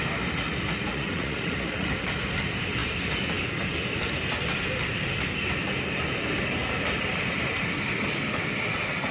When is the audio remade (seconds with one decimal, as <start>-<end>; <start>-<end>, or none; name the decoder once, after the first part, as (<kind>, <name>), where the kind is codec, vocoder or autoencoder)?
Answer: 0.9-1.9 (vocoder, Vocos)